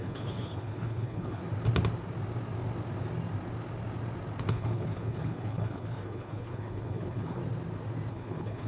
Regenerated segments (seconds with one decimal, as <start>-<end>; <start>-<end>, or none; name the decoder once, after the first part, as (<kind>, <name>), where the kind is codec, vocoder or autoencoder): 0.0-1.4 (codec, HILCodec); 4.5-7.4; 8.1-8.7